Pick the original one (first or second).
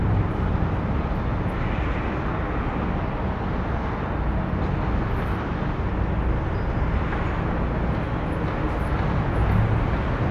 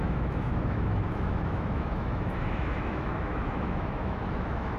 first